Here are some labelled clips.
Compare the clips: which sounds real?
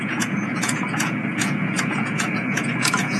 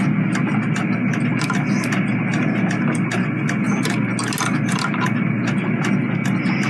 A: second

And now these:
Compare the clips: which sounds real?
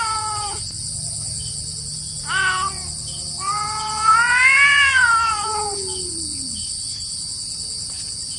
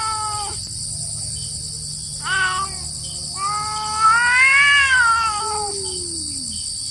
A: second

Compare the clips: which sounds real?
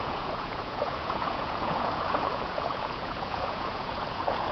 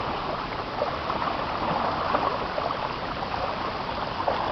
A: second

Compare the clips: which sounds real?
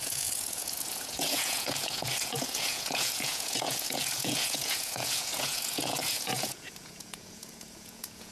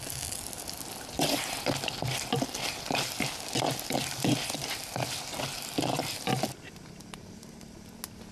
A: second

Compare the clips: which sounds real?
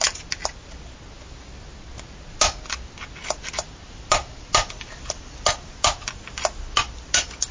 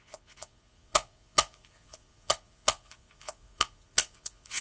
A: first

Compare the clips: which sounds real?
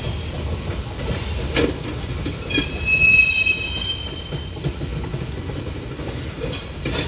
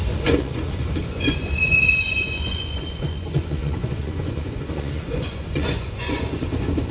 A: first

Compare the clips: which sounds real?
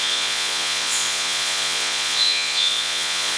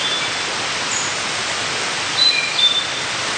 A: second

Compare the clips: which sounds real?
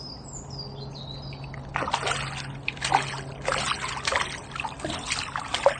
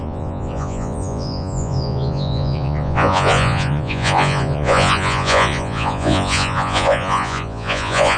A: first